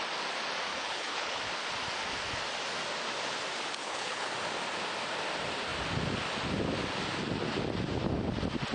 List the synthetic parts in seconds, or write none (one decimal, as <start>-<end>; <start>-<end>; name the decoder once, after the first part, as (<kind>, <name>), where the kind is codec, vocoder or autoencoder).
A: 0.7-1.4 (codec, HILCodec); 3.8-4.3